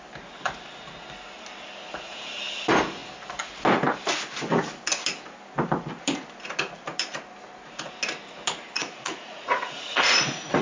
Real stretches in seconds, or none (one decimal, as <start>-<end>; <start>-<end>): 0.0-8.8